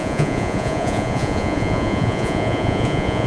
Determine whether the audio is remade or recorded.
remade